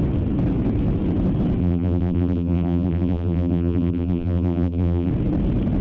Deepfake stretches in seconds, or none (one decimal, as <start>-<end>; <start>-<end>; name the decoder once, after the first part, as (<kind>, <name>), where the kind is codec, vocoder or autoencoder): 1.6-5.1 (vocoder, BigVGAN v2)